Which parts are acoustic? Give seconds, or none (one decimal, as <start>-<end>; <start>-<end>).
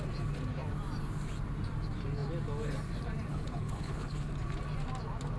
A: 0.0-3.3; 4.3-5.4